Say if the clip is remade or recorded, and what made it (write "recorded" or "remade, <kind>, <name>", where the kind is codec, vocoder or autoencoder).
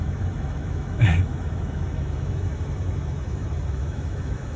remade, autoencoder, DAC-VAE